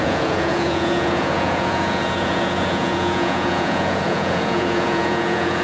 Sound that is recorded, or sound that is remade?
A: remade